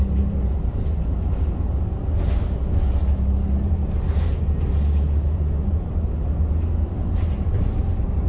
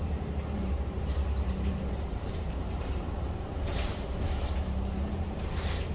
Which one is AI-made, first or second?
second